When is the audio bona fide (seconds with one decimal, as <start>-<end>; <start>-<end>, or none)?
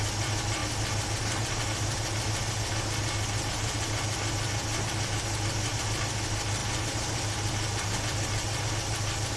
0.0-9.4